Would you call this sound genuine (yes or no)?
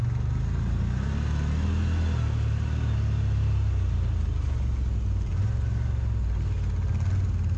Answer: yes